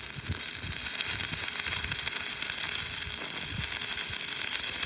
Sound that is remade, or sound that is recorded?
recorded